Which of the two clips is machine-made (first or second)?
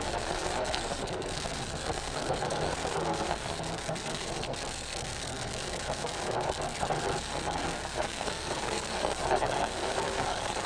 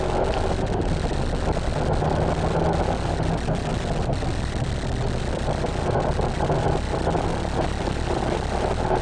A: first